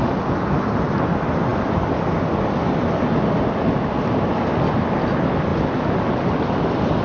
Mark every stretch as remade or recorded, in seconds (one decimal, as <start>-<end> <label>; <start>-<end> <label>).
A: 0.0-7.0 recorded

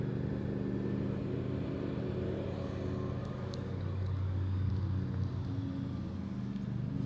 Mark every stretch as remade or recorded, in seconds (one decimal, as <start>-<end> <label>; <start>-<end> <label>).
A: 0.0-3.2 recorded; 3.2-4.7 remade; 4.7-7.1 recorded

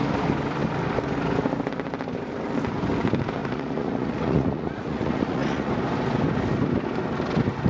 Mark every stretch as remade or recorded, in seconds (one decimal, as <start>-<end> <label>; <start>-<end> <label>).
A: 0.0-3.4 recorded; 3.4-5.7 remade; 5.7-7.7 recorded

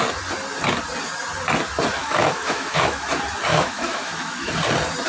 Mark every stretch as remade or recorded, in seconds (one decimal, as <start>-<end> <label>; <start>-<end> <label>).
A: 0.0-2.0 recorded; 2.0-3.0 remade; 3.0-3.5 recorded; 3.5-4.5 remade; 4.5-5.1 recorded

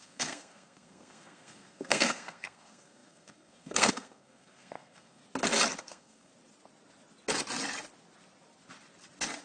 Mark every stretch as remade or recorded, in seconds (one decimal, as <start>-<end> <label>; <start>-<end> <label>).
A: 0.0-5.2 remade; 5.2-5.8 recorded; 5.8-6.3 remade; 6.3-9.4 recorded

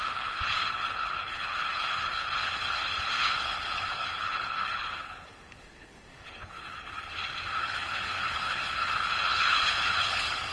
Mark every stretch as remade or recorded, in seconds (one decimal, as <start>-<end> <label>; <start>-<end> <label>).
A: 0.0-7.1 remade; 7.1-7.6 recorded; 7.6-10.5 remade